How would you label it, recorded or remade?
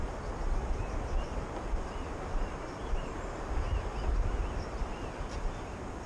recorded